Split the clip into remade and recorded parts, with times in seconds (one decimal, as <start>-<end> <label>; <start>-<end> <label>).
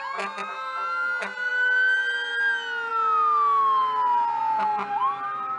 0.0-5.6 recorded